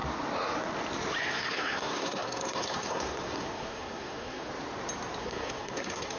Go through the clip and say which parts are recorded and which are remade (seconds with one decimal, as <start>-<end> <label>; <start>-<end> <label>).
0.0-1.2 recorded; 1.2-4.5 remade; 4.5-5.2 recorded; 5.2-6.2 remade